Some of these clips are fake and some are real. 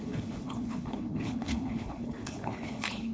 fake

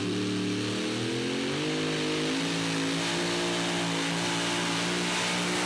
real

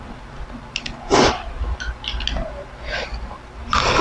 real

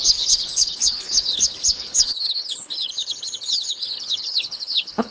fake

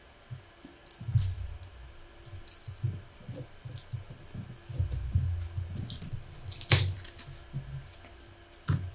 real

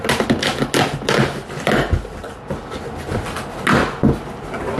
real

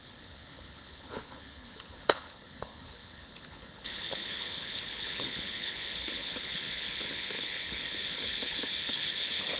fake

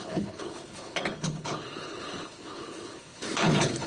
fake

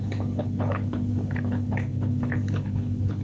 fake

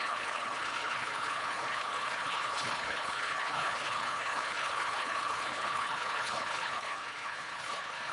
fake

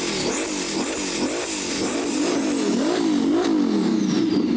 real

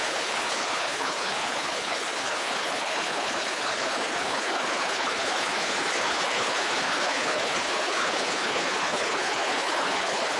fake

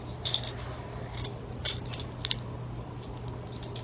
real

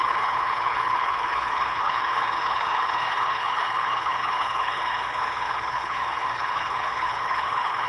fake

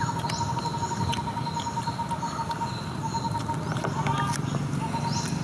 real